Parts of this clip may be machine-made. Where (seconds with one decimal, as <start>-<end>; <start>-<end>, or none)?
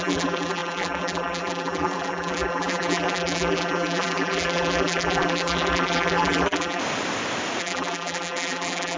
0.0-6.8; 7.6-9.0